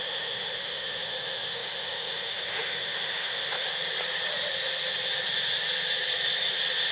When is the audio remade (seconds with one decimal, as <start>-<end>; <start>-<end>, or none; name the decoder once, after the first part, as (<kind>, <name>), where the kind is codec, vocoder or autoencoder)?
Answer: 0.0-3.7 (autoencoder, DAC-VAE)